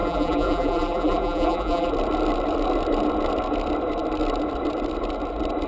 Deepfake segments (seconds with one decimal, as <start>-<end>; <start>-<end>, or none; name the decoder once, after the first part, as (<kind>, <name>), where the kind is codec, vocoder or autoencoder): 0.0-1.9 (vocoder, BigVGAN v2)

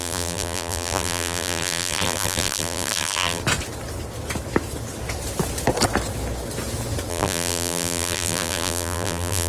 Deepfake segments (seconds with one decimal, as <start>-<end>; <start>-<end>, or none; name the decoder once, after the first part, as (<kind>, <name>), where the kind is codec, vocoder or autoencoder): 0.0-3.4 (vocoder, BigVGAN v2); 7.1-9.5

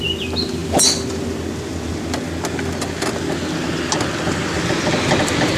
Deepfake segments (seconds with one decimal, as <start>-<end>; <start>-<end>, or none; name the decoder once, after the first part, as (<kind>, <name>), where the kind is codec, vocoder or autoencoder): none

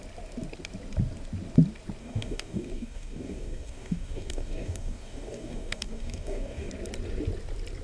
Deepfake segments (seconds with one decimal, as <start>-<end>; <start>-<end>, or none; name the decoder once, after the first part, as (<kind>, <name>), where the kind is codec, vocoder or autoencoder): 2.0-6.7 (codec, DAC)

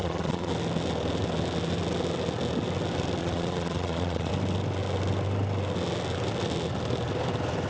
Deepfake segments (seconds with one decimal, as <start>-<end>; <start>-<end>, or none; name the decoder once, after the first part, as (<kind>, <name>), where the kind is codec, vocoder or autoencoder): 0.0-0.5 (vocoder, Vocos); 3.2-4.3